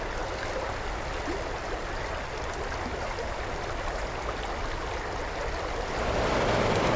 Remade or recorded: recorded